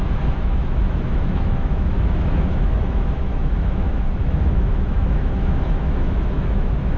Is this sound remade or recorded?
remade